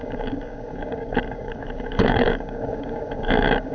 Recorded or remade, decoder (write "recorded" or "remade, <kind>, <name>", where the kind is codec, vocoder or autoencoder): remade, codec, DAC